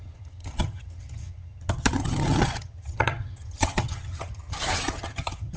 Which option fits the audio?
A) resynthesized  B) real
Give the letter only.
A